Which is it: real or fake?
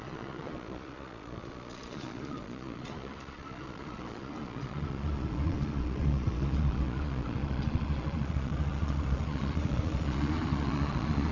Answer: fake